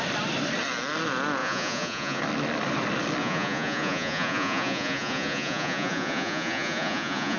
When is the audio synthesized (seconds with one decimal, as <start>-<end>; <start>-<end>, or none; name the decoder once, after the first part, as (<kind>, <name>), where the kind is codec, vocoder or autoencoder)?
1.4-2.2 (vocoder, Vocos); 3.2-7.4